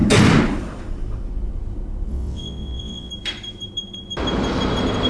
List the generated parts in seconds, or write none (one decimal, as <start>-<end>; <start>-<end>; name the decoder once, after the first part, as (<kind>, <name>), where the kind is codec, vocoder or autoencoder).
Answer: 2.1-3.1 (vocoder, WaveNeXt)